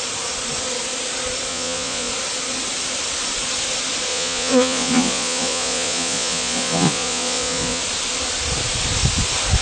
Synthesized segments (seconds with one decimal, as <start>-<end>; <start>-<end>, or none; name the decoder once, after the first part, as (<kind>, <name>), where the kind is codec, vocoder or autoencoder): 1.5-2.1 (vocoder, Vocos); 4.1-7.8